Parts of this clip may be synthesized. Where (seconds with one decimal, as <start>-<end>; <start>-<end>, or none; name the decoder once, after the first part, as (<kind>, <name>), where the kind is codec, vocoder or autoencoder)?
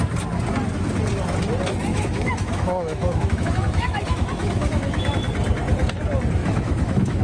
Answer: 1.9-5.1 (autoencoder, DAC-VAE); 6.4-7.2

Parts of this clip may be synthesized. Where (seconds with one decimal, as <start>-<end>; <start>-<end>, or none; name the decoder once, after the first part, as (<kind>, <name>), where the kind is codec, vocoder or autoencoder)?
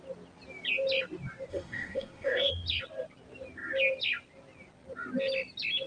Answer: 1.5-2.5 (codec, SNAC)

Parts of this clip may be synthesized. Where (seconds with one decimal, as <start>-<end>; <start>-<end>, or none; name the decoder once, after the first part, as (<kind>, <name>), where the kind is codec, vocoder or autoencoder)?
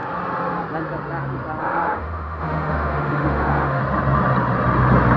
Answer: 1.6-3.8 (autoencoder, DAC-VAE)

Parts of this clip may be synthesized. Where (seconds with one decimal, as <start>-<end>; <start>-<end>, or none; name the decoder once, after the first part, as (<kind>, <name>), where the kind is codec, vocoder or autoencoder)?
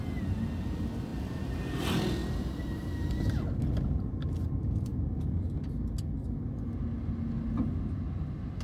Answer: none